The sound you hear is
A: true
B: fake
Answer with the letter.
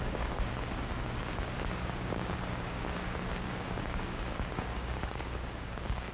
B